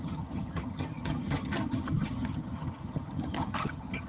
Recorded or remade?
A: remade